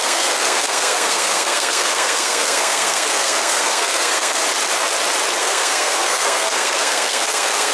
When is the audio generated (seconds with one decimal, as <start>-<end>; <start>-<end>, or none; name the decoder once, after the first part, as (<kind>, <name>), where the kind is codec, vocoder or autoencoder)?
0.0-4.4 (codec, SNAC); 5.4-7.7